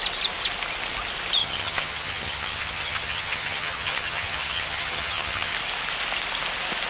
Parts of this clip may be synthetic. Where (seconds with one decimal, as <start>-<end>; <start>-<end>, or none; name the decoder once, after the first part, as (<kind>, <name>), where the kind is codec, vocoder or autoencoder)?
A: 1.4-5.5 (vocoder, HiFi-GAN)